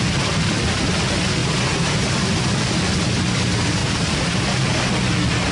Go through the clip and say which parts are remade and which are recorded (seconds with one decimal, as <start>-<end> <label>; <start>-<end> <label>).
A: 0.0-1.4 recorded; 1.4-2.1 remade; 2.1-3.8 recorded; 3.8-4.4 remade; 4.4-5.5 recorded